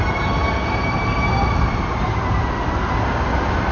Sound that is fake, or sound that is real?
real